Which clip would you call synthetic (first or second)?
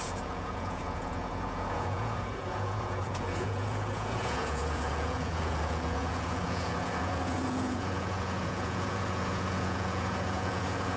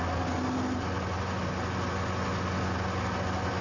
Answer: first